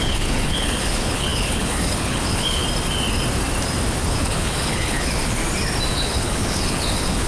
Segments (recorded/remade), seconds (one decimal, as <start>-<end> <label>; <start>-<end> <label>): 0.0-2.6 remade; 2.6-4.0 recorded; 4.0-5.4 remade; 5.4-5.9 recorded; 5.9-7.3 remade